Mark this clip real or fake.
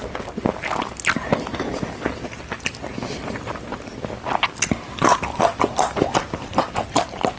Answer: real